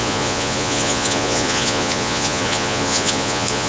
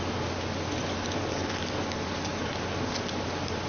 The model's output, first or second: first